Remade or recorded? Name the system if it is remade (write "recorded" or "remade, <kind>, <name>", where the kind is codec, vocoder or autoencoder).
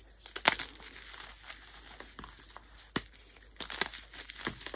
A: recorded